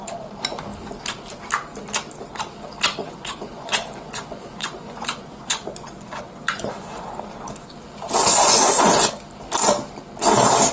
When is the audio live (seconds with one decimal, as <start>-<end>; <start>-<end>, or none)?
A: 0.0-3.0; 7.1-8.3; 9.1-10.7